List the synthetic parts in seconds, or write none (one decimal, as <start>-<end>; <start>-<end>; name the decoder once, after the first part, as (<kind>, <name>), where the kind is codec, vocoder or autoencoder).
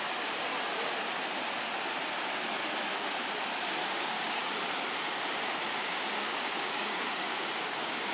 3.8-4.5 (codec, DAC); 5.7-8.1